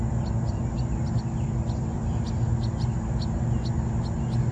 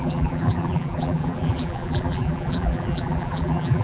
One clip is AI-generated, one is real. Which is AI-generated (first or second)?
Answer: second